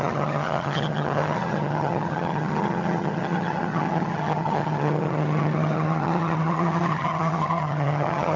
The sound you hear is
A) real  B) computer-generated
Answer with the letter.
B